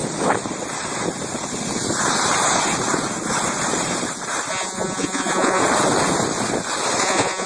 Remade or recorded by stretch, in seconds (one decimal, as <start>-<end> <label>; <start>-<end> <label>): 0.0-4.5 recorded; 4.5-5.6 remade; 5.6-7.0 recorded; 7.0-7.5 remade